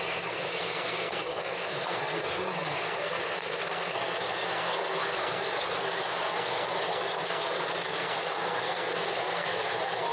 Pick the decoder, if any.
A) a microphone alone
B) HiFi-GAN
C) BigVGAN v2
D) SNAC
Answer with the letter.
D